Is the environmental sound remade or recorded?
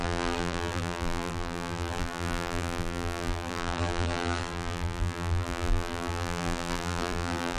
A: remade